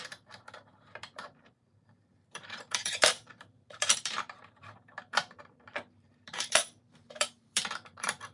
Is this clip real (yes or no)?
no